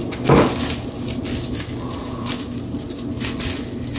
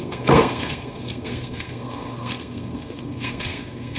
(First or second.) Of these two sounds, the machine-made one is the second